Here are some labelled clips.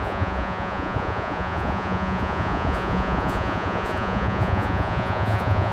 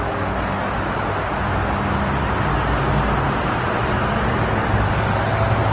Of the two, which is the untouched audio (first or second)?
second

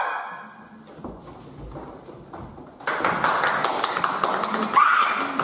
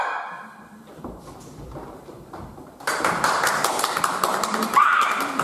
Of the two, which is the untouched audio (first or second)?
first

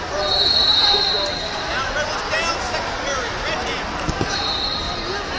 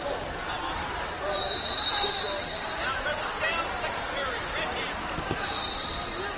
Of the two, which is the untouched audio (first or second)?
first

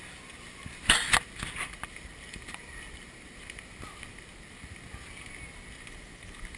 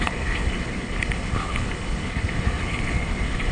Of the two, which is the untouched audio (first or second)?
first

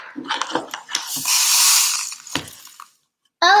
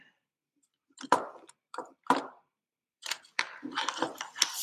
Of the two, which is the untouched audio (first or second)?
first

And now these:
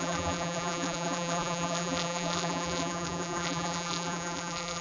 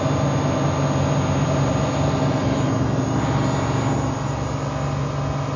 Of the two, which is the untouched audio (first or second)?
second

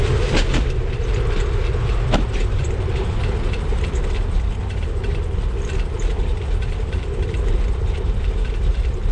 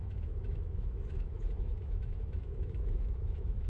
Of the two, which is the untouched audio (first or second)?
first